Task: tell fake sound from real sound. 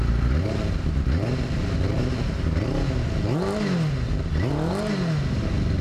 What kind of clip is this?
real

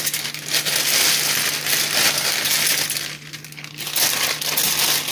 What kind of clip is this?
real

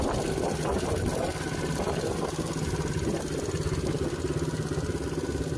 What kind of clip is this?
real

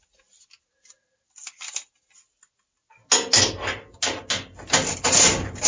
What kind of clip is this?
real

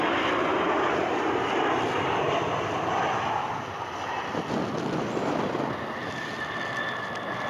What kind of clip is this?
real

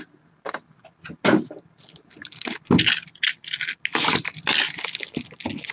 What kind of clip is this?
real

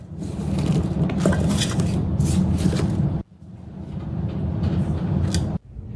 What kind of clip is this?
real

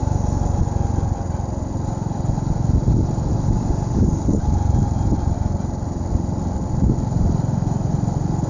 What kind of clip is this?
real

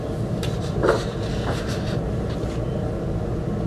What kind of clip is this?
fake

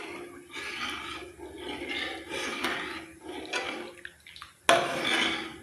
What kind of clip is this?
real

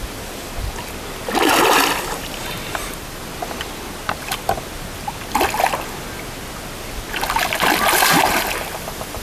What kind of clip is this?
real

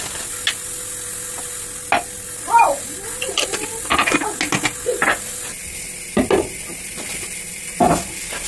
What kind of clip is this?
real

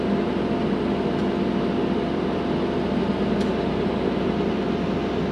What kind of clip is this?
real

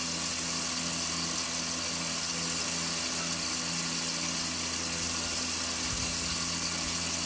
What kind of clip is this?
real